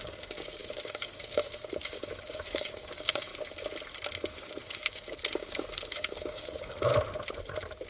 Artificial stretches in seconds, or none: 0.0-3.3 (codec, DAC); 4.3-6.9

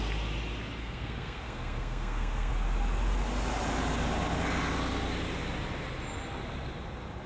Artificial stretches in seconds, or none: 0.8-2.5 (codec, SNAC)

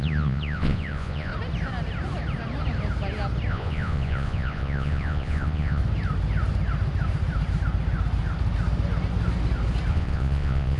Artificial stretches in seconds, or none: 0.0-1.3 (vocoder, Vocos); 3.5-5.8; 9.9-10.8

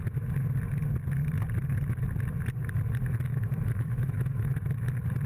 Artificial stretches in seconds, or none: 3.3-4.5 (autoencoder, DAC-VAE)

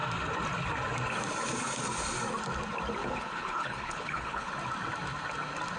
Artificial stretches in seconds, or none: 3.0-4.5 (codec, HILCodec)

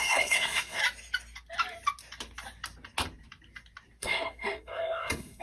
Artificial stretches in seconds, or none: 0.0-0.8 (codec, SNAC); 4.0-5.4

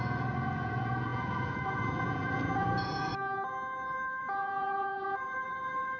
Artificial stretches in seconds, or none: 0.0-3.1 (vocoder, Vocos); 4.2-6.0